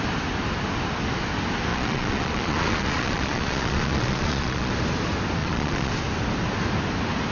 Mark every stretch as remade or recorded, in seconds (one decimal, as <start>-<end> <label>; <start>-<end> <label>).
0.0-1.7 recorded; 1.7-4.7 remade; 4.7-5.4 recorded; 5.4-5.9 remade; 5.9-7.3 recorded